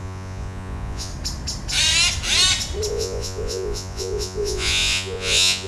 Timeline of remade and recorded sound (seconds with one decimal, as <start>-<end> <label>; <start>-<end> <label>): 0.0-1.1 remade; 1.1-2.9 recorded; 2.9-5.7 remade